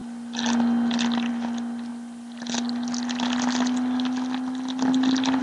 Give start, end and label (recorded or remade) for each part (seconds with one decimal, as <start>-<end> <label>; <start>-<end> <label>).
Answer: 0.0-5.4 recorded